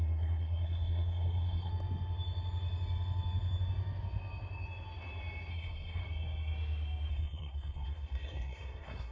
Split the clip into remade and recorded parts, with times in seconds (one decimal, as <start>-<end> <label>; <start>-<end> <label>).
0.0-1.7 remade; 1.7-5.5 recorded; 5.5-6.0 remade; 6.0-7.1 recorded; 7.1-9.1 remade